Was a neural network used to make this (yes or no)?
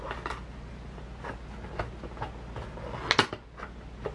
no